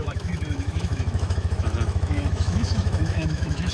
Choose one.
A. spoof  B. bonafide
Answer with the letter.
A